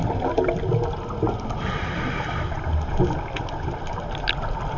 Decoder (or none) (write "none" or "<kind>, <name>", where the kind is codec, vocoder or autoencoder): none